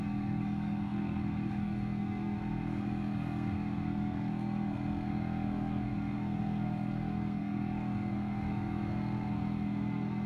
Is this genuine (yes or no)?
no